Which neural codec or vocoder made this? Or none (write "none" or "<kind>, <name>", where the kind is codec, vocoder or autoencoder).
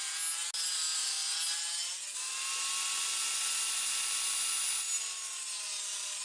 none